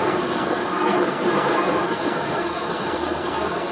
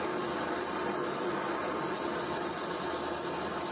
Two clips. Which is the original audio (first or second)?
second